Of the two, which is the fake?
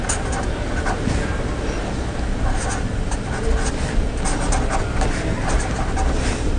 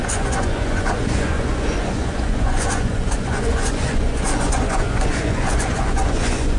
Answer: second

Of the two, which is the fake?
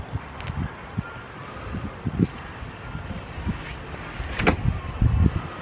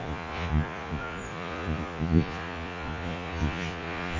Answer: second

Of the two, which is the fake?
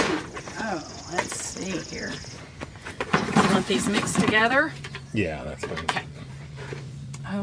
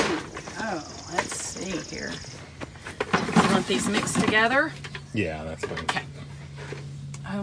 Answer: first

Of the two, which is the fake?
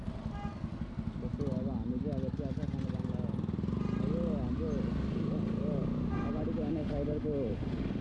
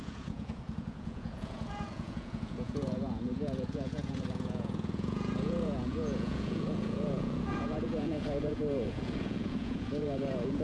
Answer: second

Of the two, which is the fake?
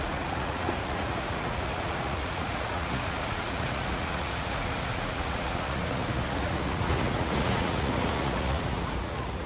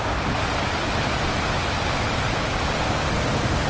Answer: first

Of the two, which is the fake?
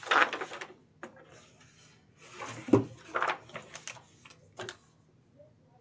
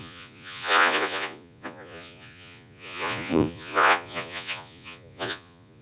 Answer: second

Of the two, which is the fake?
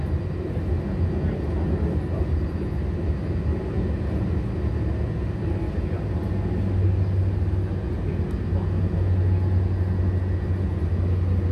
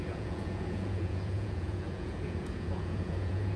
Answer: second